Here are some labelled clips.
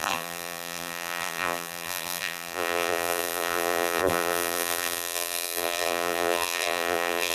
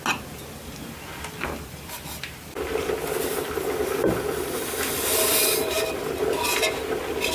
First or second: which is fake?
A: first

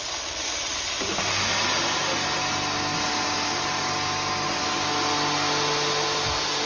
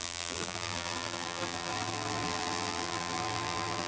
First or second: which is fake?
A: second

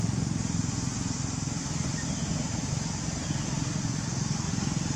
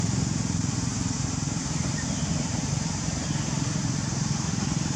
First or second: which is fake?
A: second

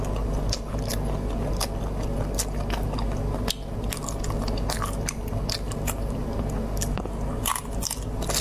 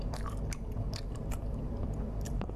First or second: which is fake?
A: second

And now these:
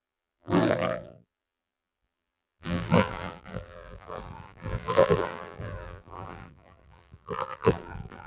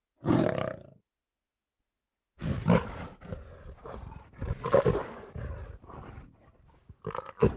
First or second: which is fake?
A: first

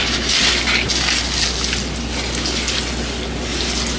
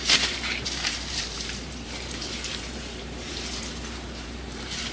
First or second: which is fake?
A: second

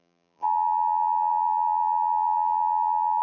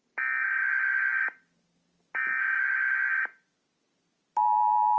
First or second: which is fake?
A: first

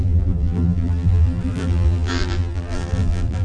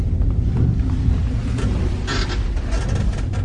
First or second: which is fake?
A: first